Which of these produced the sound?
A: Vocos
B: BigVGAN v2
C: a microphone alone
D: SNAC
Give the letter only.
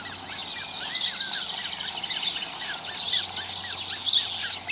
C